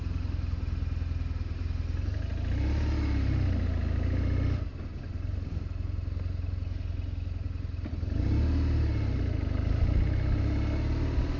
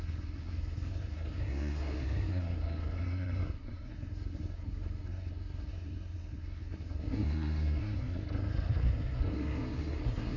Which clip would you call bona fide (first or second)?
first